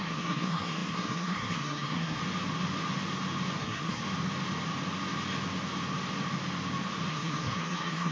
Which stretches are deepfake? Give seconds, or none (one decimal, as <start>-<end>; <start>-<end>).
0.0-2.2; 3.6-4.0; 7.1-8.1